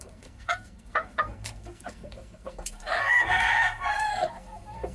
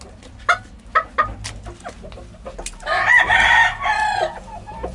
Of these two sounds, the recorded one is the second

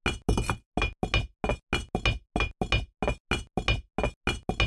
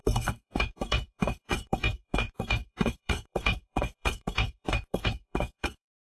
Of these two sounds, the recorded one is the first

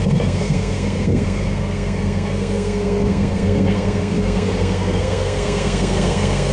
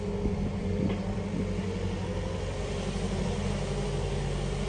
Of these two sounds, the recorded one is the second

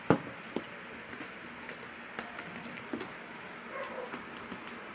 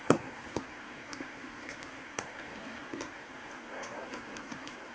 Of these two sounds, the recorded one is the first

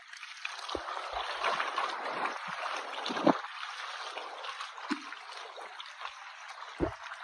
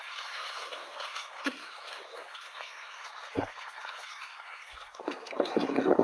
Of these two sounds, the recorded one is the first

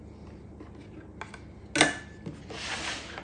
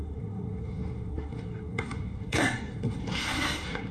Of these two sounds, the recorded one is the first